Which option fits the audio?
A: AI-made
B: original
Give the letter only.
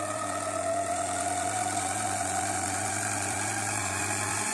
A